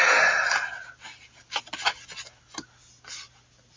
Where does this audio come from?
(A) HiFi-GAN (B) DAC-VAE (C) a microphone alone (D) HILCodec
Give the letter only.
C